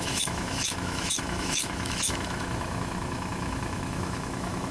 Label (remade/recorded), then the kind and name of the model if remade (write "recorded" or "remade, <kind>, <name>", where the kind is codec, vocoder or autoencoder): remade, autoencoder, DAC-VAE